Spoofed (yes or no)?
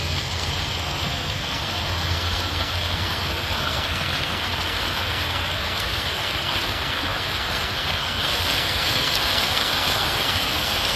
yes